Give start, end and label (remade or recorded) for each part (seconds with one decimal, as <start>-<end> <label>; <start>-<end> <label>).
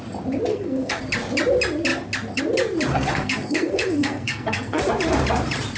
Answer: 0.0-0.5 recorded; 0.5-1.0 remade; 1.0-2.9 recorded; 2.9-4.8 remade; 4.8-5.8 recorded